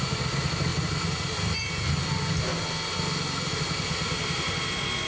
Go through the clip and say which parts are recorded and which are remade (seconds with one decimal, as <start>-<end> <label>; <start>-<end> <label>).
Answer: 0.0-5.1 recorded